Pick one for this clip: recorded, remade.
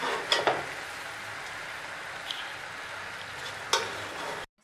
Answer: recorded